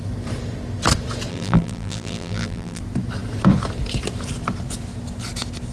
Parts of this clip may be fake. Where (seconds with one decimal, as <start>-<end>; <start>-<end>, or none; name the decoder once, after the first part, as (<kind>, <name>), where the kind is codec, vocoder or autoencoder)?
1.3-2.8 (vocoder, BigVGAN v2)